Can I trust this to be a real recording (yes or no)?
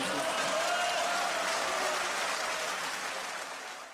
yes